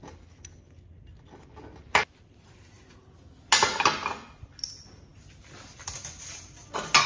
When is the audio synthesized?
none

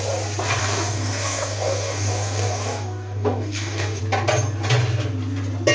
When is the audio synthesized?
0.6-4.0

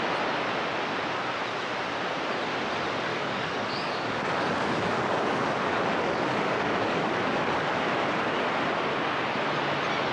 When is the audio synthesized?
3.1-7.8

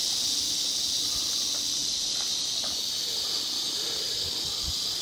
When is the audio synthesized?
none

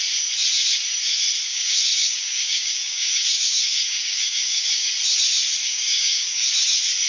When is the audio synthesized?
1.5-4.9; 5.6-6.5

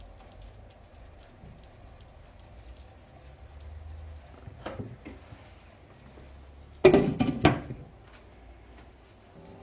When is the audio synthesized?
none

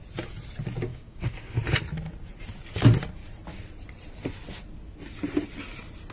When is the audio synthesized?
0.9-1.6

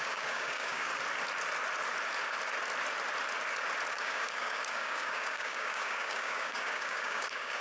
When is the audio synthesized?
0.0-0.9; 3.9-7.6